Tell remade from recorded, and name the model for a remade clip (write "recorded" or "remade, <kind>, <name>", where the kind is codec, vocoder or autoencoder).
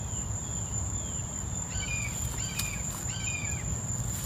recorded